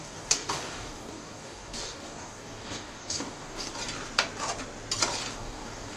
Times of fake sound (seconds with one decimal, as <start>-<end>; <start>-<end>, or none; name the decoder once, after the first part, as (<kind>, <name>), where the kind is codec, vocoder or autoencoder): 0.0-3.7 (codec, DAC); 5.3-6.0